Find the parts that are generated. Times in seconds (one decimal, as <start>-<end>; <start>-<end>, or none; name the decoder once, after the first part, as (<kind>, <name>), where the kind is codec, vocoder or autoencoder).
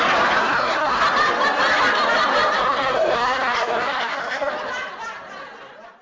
0.4-1.0 (codec, SNAC); 2.6-4.5